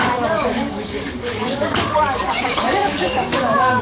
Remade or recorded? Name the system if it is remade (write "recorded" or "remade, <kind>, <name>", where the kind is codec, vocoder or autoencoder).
remade, codec, DAC